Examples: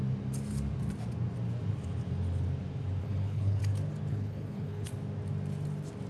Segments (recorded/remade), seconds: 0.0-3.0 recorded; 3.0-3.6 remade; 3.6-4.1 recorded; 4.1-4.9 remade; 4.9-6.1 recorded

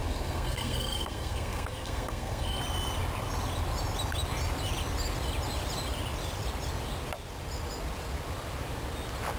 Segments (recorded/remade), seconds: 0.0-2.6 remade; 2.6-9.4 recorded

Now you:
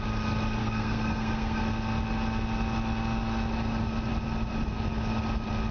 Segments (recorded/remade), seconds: 0.0-0.6 recorded; 0.6-1.6 remade; 1.6-5.7 recorded

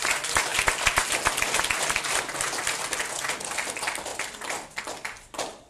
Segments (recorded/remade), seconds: 0.0-5.7 recorded